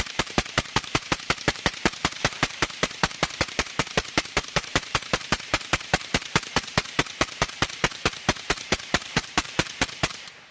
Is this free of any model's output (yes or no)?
no